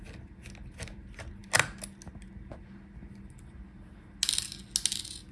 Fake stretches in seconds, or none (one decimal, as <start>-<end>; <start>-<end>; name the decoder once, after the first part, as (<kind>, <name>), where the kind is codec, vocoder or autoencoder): none